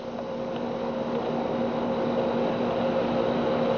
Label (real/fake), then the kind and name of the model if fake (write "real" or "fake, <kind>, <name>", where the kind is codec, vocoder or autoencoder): real